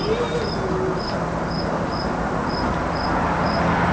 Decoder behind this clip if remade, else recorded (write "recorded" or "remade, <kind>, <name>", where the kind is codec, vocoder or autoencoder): recorded